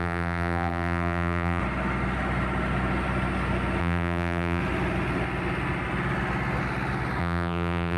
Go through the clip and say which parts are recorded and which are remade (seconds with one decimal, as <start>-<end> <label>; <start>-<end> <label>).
0.0-1.6 remade; 1.6-3.8 recorded; 3.8-4.6 remade; 4.6-7.2 recorded; 7.2-8.0 remade